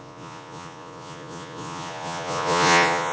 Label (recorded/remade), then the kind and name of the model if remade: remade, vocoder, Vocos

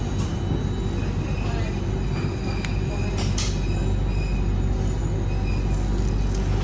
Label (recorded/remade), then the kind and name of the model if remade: recorded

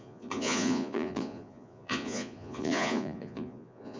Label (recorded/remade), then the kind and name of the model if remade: remade, vocoder, Vocos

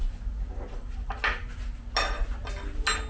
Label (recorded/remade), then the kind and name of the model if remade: recorded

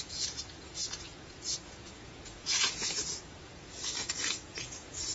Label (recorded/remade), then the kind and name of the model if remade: remade, vocoder, Vocos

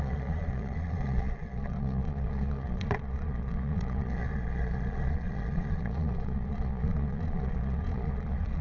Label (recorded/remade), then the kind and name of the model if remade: remade, vocoder, Vocos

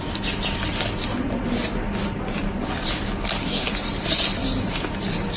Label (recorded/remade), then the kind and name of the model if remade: recorded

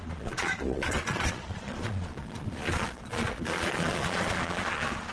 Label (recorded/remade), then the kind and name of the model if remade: remade, vocoder, Vocos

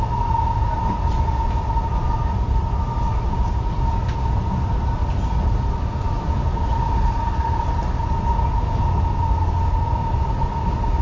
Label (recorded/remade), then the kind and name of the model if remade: recorded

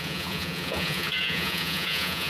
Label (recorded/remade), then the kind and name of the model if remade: remade, vocoder, Vocos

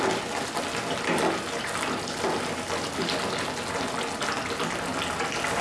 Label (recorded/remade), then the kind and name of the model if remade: recorded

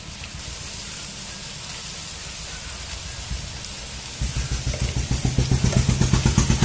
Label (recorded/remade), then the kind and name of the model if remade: recorded